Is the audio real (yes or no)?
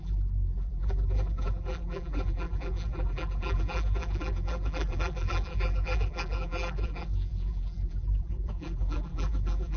no